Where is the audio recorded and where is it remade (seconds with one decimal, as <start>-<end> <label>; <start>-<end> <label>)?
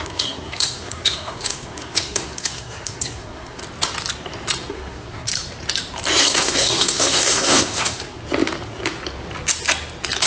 0.0-3.6 remade; 3.6-4.7 recorded; 4.7-5.3 remade; 5.3-6.2 recorded; 6.2-8.2 remade; 8.2-10.3 recorded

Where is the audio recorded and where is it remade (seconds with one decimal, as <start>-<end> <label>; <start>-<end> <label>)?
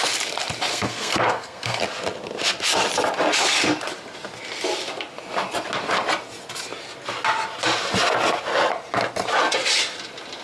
0.0-0.7 recorded; 0.7-1.8 remade; 1.8-10.4 recorded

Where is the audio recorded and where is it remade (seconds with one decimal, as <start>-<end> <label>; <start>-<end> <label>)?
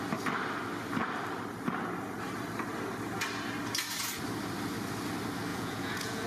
0.0-5.5 recorded; 5.5-6.3 remade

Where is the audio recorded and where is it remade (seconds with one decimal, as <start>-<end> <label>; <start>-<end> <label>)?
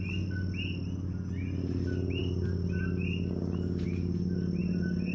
0.0-5.1 recorded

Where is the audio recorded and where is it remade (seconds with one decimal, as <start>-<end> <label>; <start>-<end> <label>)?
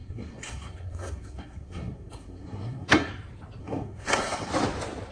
0.0-3.1 remade; 3.1-3.6 recorded; 3.6-4.5 remade; 4.5-5.1 recorded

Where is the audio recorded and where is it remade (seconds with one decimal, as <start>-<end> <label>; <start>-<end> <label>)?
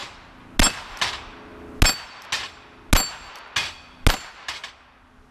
0.0-5.3 recorded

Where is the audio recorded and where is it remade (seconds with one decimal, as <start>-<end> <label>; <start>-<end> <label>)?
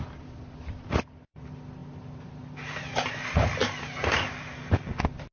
0.0-5.3 recorded